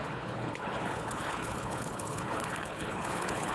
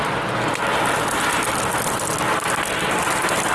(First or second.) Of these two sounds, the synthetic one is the first